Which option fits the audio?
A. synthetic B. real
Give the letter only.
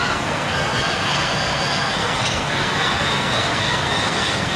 A